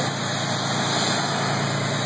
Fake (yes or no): no